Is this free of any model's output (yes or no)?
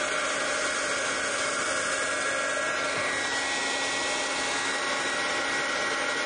yes